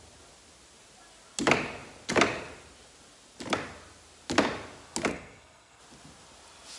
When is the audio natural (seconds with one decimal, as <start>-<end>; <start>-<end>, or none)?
0.0-5.1; 5.8-6.8